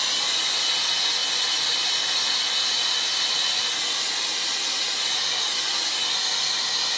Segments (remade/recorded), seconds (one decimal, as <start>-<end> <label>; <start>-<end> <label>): 0.0-7.0 recorded